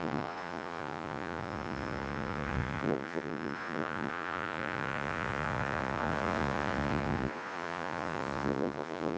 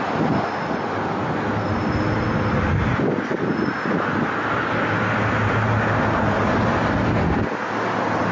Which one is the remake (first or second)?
first